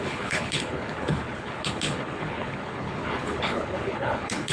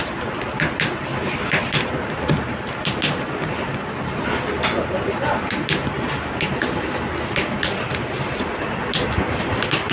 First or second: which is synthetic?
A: first